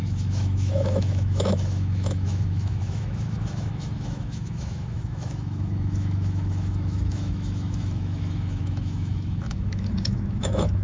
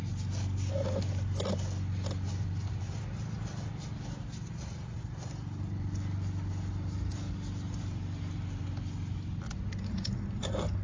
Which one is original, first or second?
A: second